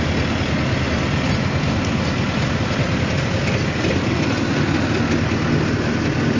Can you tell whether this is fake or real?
real